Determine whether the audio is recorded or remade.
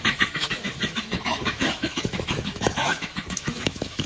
remade